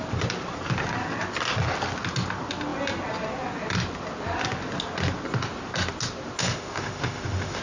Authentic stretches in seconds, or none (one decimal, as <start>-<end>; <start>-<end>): 0.0-6.4

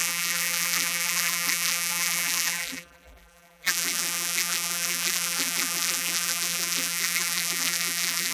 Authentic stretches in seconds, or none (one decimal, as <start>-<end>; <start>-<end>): none

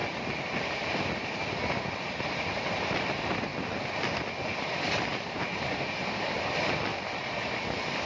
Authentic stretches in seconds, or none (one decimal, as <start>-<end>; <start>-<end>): 0.0-8.1

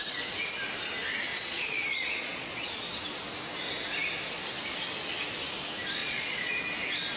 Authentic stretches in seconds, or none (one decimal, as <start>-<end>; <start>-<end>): 0.0-1.3; 2.7-6.0; 6.6-7.2

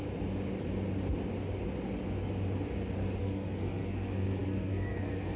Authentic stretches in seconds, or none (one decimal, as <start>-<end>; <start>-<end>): 0.0-3.2

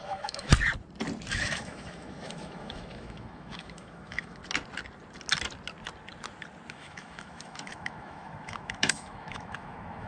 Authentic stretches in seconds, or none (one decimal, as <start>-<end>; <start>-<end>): 0.5-1.3; 4.4-6.7